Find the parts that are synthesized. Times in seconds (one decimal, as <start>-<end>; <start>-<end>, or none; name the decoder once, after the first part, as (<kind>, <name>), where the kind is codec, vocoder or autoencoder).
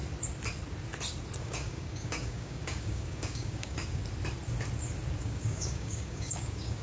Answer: 1.4-4.0 (codec, DAC); 5.2-6.8